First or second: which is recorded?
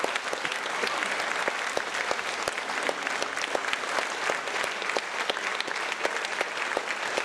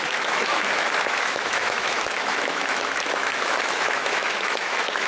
first